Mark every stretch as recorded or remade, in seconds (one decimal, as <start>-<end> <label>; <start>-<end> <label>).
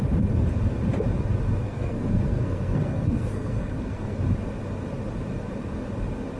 0.0-1.6 recorded; 1.6-4.2 remade; 4.2-6.4 recorded